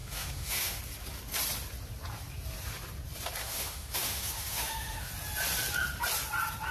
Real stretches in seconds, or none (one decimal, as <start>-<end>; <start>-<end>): 0.8-3.4; 5.1-6.7